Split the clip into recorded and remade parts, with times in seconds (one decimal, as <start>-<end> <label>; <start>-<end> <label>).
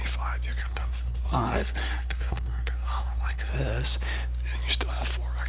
0.0-0.6 recorded; 0.6-3.5 remade; 3.5-5.5 recorded